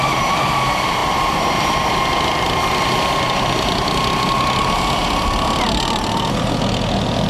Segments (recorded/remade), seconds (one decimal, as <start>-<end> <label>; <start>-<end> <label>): 0.0-7.3 recorded